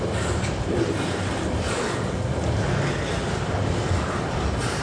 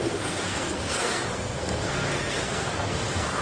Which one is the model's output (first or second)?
second